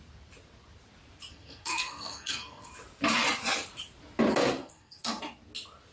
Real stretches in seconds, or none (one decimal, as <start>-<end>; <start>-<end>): 0.0-1.3; 2.7-4.6; 5.2-5.9